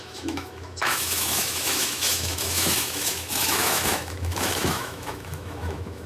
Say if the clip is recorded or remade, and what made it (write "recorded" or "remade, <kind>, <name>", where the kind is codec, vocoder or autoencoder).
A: remade, autoencoder, DAC-VAE